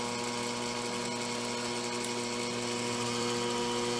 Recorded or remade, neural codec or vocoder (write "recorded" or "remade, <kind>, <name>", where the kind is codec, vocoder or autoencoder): recorded